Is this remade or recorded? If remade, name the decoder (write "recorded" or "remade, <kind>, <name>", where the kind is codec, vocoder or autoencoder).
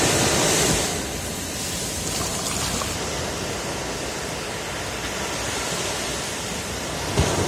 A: recorded